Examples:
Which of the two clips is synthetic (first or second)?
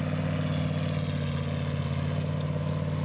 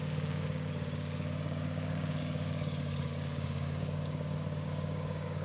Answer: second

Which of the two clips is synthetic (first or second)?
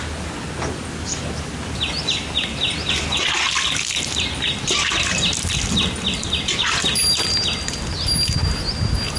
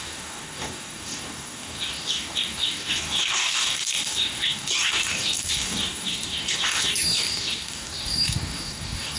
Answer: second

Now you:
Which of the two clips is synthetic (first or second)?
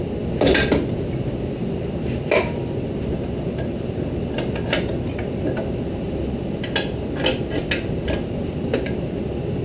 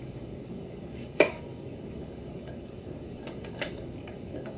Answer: second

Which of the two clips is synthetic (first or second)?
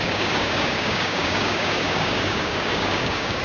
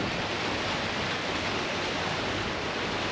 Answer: first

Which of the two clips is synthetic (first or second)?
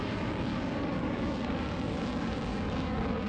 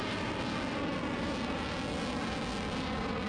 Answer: first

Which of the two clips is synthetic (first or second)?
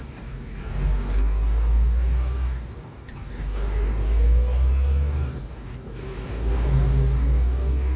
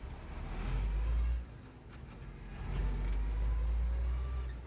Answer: first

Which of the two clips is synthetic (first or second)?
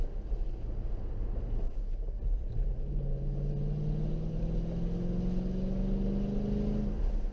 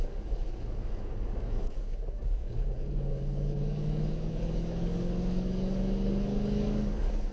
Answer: second